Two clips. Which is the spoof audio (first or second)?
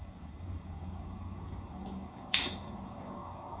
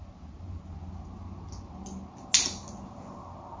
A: first